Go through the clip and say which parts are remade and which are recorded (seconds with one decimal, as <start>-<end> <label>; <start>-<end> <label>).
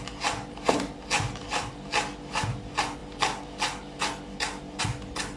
0.0-5.4 recorded